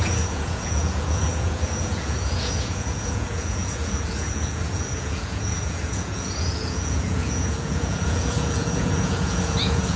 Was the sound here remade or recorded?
remade